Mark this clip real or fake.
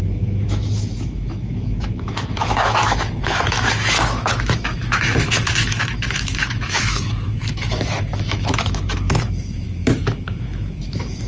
fake